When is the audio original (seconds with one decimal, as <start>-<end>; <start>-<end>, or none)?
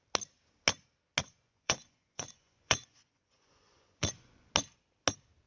0.0-1.2; 4.5-5.5